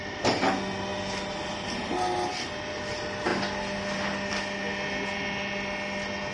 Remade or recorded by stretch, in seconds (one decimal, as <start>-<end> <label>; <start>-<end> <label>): 0.0-6.3 recorded